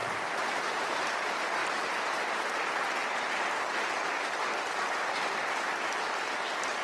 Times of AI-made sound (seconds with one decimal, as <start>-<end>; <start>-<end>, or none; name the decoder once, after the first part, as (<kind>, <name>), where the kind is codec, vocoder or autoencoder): 0.0-1.1 (vocoder, BigVGAN v2)

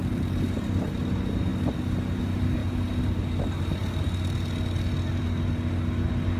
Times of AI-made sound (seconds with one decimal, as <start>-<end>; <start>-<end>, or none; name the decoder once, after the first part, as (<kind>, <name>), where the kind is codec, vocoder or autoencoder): none